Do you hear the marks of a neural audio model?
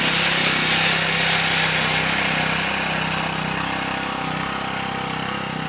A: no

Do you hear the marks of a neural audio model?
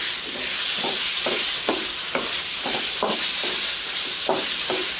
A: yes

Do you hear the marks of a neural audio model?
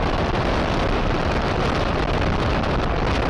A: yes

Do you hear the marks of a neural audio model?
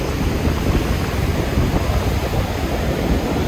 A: no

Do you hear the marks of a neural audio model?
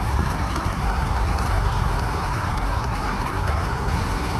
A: yes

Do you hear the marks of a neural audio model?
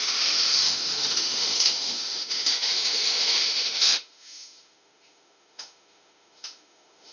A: yes